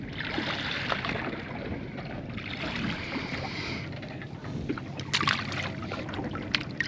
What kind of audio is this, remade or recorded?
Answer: recorded